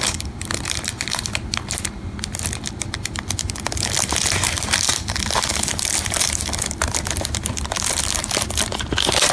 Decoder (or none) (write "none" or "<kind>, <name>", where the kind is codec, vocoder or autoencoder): none